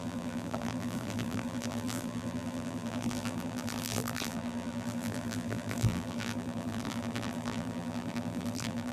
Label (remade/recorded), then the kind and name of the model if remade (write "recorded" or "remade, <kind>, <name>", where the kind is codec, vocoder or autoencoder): remade, vocoder, BigVGAN v2